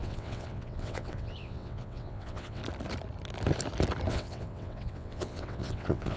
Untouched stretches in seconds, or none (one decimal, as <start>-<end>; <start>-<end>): 2.6-4.1